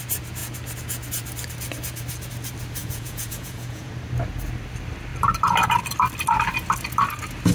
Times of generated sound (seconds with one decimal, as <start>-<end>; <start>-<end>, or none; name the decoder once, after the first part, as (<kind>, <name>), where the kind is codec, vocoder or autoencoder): 2.8-3.9 (vocoder, Vocos)